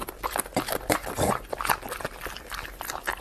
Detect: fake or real real